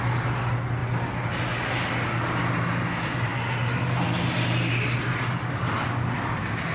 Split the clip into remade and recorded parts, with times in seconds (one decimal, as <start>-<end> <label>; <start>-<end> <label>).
0.0-6.7 recorded